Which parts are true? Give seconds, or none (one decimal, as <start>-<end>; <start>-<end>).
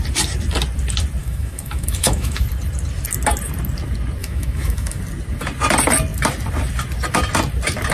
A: 0.0-1.2; 2.4-4.2; 5.0-7.9